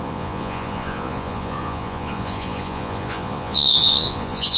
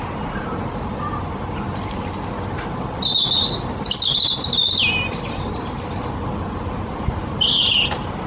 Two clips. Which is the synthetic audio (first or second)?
first